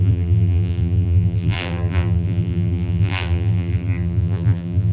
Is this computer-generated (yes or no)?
yes